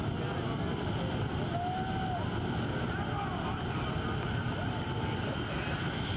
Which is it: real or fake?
real